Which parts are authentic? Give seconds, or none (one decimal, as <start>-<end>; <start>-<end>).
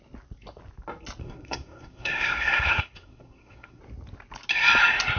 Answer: 0.0-1.2; 3.8-5.2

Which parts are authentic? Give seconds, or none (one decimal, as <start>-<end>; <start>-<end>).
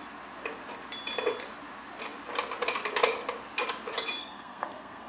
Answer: 0.0-4.2